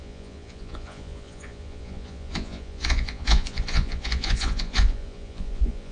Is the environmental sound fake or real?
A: fake